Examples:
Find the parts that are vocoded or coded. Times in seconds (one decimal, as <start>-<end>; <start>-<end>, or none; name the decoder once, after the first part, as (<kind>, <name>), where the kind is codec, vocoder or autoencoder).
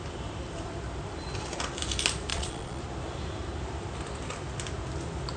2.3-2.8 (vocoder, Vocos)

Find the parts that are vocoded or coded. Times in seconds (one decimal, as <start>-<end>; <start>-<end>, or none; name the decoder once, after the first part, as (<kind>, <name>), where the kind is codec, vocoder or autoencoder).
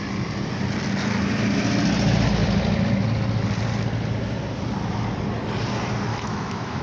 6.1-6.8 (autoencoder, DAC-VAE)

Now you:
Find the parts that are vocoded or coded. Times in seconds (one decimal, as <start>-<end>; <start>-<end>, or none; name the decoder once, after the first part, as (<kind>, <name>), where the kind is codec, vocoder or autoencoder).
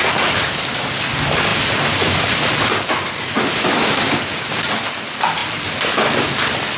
1.5-3.4 (vocoder, BigVGAN v2)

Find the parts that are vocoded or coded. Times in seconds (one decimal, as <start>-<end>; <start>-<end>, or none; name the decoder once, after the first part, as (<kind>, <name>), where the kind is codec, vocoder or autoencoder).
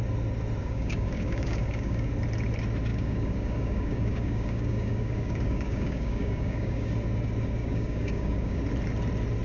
0.6-2.1 (codec, DAC); 2.9-6.9; 7.6-8.6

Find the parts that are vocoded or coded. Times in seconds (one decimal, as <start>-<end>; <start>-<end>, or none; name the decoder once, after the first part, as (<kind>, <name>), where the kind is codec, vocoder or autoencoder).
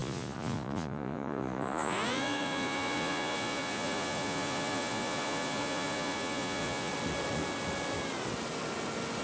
0.0-6.9 (vocoder, Vocos)